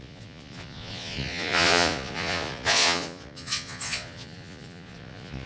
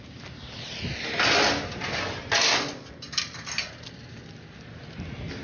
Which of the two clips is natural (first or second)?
second